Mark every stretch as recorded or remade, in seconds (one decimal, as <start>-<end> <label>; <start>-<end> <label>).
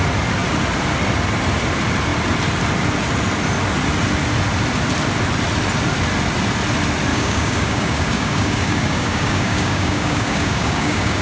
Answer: 0.0-7.1 recorded; 7.1-11.2 remade